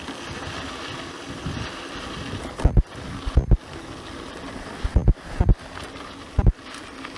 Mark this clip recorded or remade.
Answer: recorded